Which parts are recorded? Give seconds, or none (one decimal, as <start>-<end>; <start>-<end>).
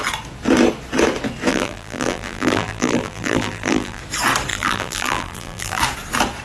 0.0-1.5; 4.0-4.5; 5.8-6.4